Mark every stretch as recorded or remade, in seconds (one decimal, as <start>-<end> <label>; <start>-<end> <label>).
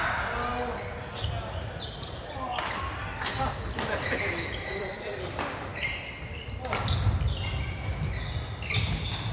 0.0-9.3 recorded